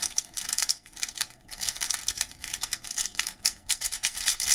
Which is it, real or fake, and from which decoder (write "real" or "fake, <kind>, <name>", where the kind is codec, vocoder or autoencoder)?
fake, codec, SNAC